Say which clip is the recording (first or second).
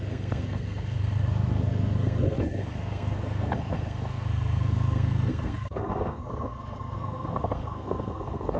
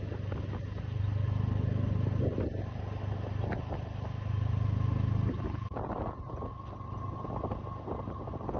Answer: second